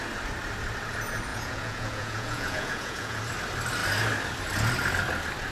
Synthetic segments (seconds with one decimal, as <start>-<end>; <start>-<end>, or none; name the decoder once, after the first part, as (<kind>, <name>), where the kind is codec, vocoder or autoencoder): 1.3-3.2 (vocoder, Vocos)